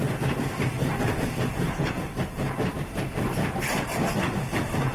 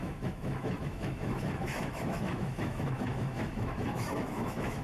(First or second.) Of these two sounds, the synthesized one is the second